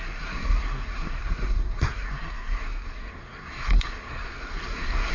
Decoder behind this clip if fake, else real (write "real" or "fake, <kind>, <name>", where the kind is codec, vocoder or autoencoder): fake, codec, SNAC